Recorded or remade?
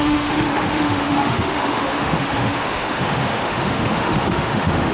remade